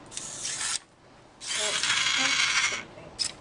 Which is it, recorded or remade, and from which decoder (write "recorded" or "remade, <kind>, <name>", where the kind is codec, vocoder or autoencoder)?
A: recorded